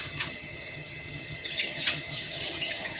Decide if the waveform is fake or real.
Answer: fake